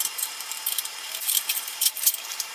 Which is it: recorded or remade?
remade